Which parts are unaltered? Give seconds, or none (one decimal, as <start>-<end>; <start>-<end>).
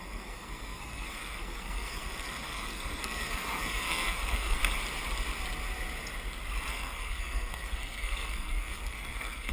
4.6-6.7